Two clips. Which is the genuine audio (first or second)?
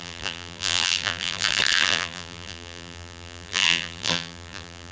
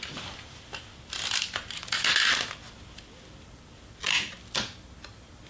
second